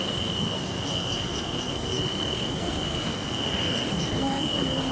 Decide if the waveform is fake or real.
fake